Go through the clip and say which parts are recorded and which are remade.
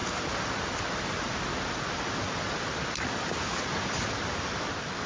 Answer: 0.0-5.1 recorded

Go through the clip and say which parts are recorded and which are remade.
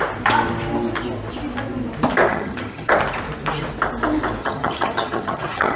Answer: 0.0-2.3 recorded; 2.3-2.9 remade; 2.9-4.4 recorded; 4.4-5.8 remade